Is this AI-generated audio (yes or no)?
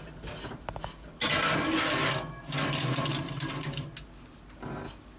no